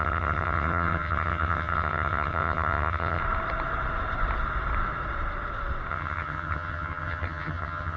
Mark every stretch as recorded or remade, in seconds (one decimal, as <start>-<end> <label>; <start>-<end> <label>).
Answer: 0.0-3.2 remade; 3.2-5.9 recorded; 5.9-8.0 remade